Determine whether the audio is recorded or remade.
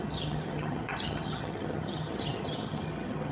remade